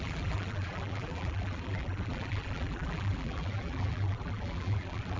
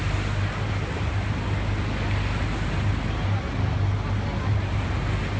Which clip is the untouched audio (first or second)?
second